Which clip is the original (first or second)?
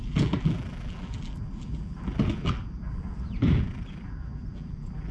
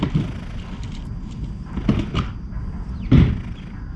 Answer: second